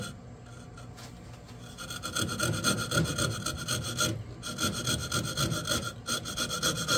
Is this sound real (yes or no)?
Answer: yes